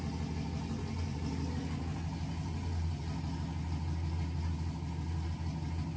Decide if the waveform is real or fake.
real